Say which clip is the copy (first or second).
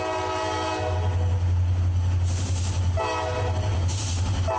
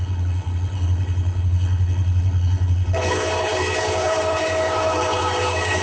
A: second